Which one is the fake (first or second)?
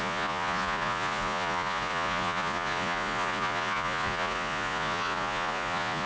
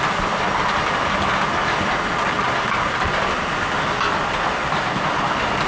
first